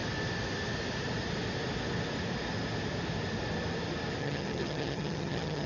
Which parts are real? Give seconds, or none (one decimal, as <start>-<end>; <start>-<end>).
0.0-4.2